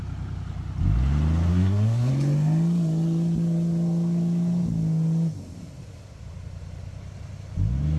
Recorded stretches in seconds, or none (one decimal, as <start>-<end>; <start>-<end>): 0.0-1.5; 2.1-8.0